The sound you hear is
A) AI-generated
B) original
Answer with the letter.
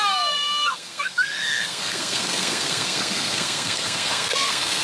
A